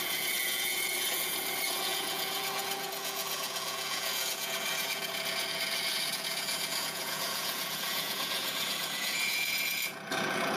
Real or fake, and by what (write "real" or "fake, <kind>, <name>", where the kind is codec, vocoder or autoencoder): fake, vocoder, Vocos